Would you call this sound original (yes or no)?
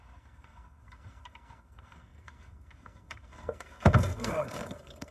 no